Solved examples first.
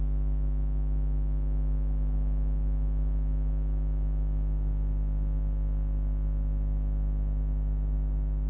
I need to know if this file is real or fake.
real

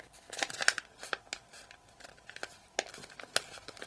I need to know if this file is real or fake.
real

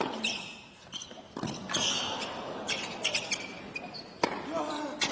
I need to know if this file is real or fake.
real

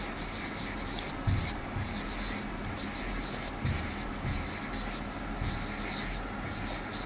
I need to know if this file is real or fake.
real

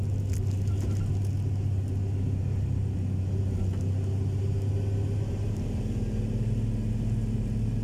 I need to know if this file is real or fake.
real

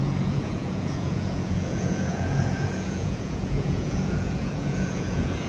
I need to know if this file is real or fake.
fake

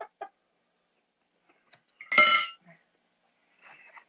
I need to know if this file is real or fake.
real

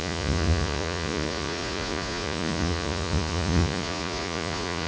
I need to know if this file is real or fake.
fake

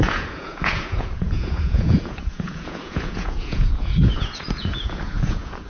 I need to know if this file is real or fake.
fake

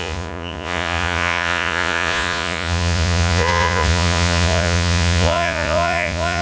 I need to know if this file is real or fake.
fake